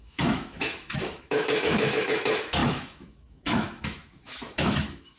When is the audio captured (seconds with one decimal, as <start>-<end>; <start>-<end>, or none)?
none